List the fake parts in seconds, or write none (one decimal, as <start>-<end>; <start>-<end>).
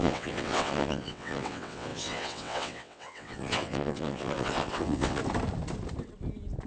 0.0-5.2